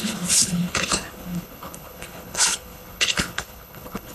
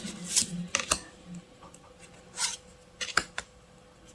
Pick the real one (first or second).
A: second